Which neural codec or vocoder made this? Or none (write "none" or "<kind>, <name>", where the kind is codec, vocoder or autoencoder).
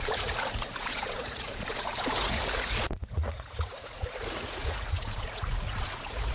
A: vocoder, Vocos